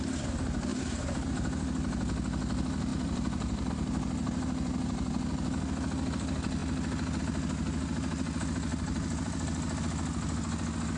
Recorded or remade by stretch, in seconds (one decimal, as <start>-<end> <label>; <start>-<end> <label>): 0.0-0.7 recorded; 0.7-1.3 remade; 1.3-2.9 recorded; 2.9-3.7 remade; 3.7-8.7 recorded; 8.7-9.8 remade; 9.8-11.0 recorded